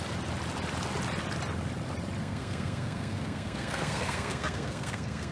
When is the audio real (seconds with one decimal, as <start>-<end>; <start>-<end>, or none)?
0.0-2.2